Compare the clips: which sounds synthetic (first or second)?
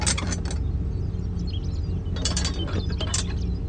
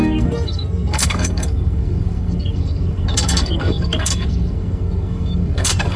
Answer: second